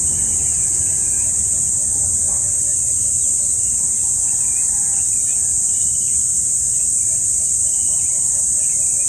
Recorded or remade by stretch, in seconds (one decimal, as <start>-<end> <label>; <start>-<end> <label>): 0.0-2.7 recorded; 2.7-3.4 remade; 3.4-9.1 recorded